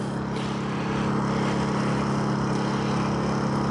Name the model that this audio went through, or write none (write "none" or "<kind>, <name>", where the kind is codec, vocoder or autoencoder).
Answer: none